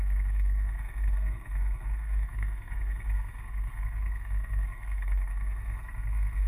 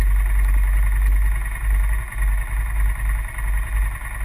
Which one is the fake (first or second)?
first